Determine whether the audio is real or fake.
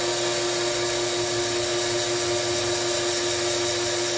real